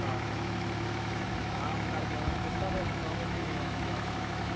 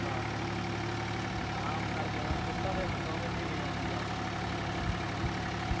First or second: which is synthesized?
first